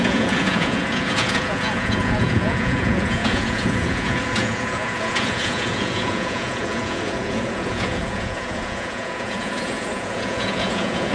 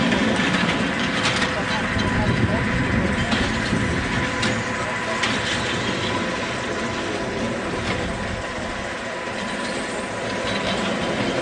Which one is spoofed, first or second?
first